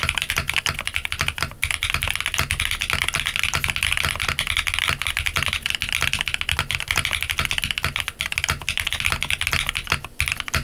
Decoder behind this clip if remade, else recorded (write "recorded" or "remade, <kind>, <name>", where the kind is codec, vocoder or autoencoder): recorded